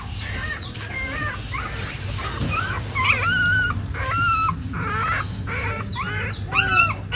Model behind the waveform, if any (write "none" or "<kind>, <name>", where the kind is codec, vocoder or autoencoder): none